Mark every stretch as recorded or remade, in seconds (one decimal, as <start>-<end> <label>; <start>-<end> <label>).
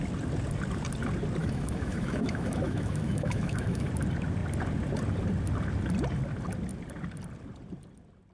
0.0-1.4 recorded; 1.4-3.9 remade; 3.9-8.3 recorded